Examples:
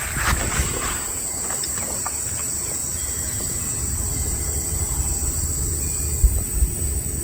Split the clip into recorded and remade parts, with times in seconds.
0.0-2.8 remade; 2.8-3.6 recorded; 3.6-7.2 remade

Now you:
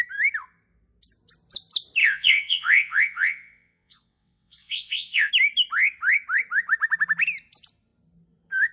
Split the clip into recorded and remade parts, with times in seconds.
0.0-2.0 recorded; 2.0-5.3 remade; 5.3-8.7 recorded

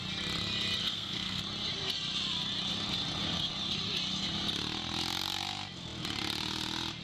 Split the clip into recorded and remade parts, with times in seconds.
0.0-0.8 recorded; 0.8-1.4 remade; 1.4-7.0 recorded

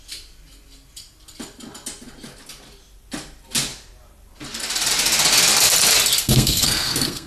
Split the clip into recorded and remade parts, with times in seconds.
0.0-6.2 recorded; 6.2-7.3 remade